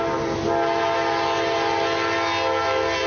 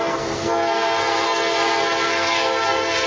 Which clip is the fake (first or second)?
second